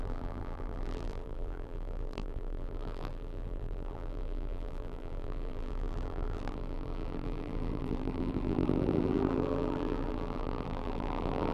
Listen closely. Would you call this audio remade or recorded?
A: remade